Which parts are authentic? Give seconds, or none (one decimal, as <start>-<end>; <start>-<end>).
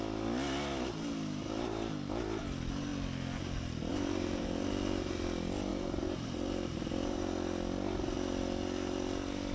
0.0-3.9; 4.7-5.7; 7.2-9.5